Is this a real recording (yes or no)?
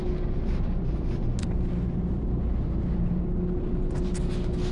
yes